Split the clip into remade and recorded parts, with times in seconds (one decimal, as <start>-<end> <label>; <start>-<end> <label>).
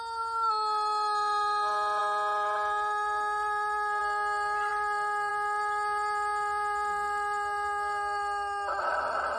0.0-9.4 recorded